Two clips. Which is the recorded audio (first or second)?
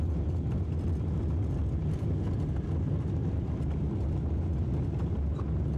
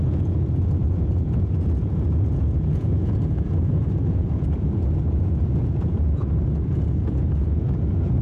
first